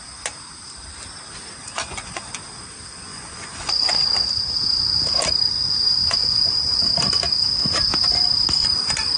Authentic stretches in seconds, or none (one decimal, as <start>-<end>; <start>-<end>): 0.0-1.6; 2.3-3.1; 4.0-6.2; 6.8-9.2